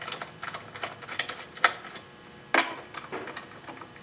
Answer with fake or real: real